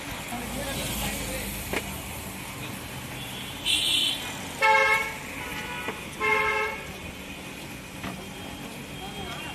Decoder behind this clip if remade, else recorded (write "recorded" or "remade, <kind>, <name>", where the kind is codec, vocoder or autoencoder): recorded